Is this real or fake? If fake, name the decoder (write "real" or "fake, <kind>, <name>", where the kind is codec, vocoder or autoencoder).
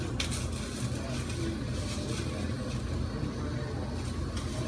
real